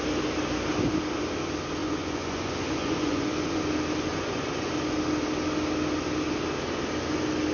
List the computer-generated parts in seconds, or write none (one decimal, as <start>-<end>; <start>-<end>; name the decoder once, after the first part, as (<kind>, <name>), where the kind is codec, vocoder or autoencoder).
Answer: 1.8-3.6 (vocoder, Vocos); 4.1-4.7